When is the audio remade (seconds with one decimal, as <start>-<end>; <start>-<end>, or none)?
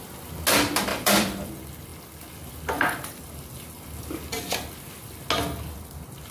0.9-1.5